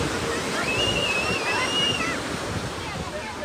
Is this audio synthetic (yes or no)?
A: no